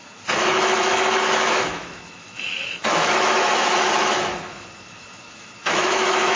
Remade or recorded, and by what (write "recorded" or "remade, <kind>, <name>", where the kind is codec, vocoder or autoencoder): remade, autoencoder, DAC-VAE